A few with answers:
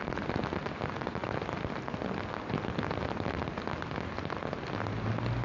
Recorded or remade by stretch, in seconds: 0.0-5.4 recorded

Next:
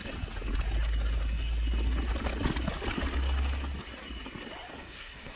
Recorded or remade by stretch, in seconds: 0.0-4.7 recorded; 4.7-5.4 remade